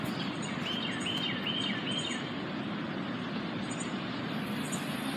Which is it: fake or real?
real